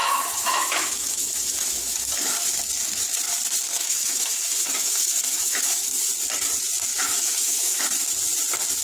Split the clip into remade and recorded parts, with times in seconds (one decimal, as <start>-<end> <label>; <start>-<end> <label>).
0.0-2.1 remade; 2.1-3.7 recorded; 3.7-6.1 remade; 6.1-6.9 recorded; 6.9-7.8 remade; 7.8-8.8 recorded